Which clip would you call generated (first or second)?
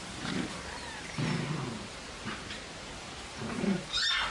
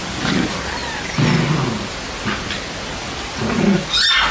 first